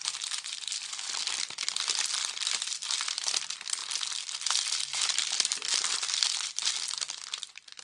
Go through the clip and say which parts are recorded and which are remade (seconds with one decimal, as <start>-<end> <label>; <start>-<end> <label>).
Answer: 0.0-0.8 recorded; 0.8-7.8 remade